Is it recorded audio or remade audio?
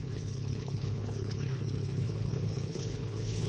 remade